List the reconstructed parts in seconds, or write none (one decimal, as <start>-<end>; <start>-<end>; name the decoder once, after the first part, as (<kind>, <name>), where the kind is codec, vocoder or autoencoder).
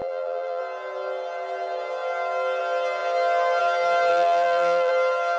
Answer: 0.0-0.6 (vocoder, BigVGAN v2); 4.1-4.9